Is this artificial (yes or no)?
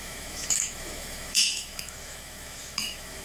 yes